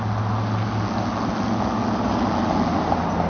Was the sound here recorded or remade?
recorded